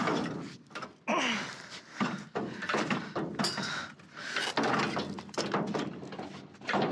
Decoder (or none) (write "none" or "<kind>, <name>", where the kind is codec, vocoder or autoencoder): none